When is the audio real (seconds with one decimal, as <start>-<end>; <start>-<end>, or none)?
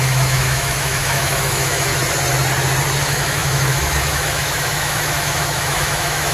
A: 1.9-3.0